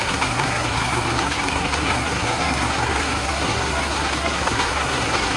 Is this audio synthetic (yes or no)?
yes